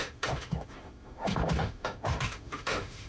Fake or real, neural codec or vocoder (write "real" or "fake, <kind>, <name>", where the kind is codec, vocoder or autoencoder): fake, autoencoder, DAC-VAE